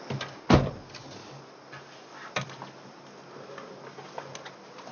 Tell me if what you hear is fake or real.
real